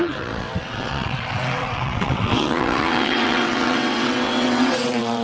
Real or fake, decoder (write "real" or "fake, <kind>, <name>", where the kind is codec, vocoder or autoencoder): fake, vocoder, WaveNeXt